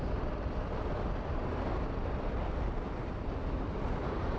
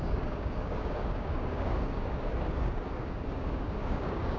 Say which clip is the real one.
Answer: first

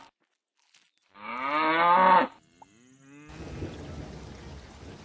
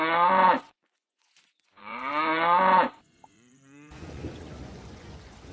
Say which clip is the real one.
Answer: first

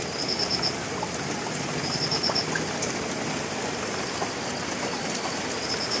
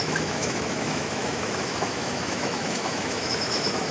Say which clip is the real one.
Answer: first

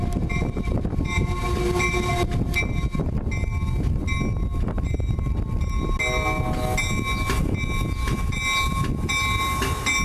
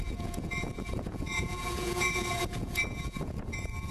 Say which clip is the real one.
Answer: first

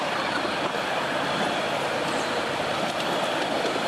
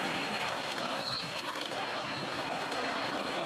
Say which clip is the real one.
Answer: first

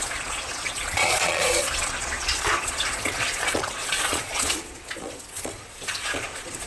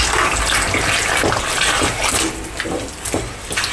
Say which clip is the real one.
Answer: second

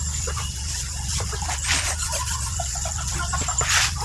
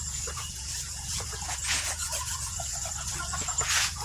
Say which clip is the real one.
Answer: first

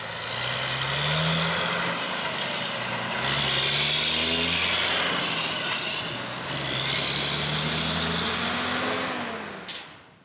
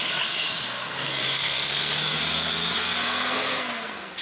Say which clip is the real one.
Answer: first